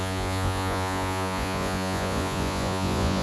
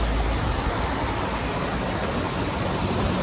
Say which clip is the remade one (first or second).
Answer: first